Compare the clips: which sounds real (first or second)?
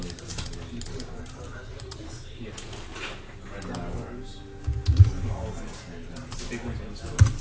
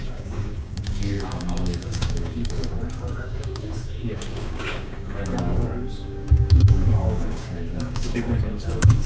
first